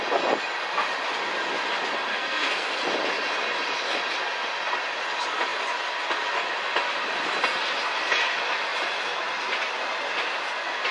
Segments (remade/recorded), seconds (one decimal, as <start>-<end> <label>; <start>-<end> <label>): 0.0-2.1 recorded; 2.1-2.8 remade; 2.8-10.9 recorded